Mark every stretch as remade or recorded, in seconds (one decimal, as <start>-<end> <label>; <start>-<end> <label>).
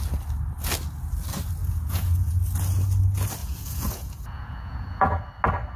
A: 0.0-1.6 recorded; 1.6-2.3 remade; 2.3-3.4 recorded; 3.4-5.2 remade; 5.2-5.8 recorded